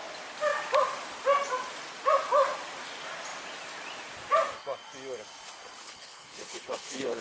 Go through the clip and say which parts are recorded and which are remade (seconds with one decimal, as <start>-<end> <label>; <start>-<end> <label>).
0.0-5.8 recorded; 5.8-7.2 remade